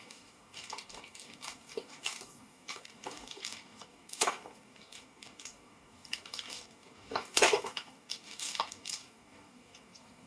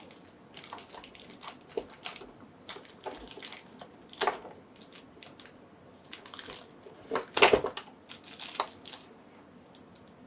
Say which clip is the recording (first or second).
second